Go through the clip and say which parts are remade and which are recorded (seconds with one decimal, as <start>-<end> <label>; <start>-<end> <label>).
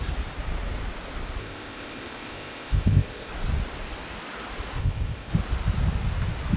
0.0-1.4 recorded; 1.4-3.3 remade; 3.3-4.8 recorded; 4.8-5.3 remade; 5.3-6.6 recorded